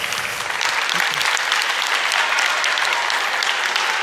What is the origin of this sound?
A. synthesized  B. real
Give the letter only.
B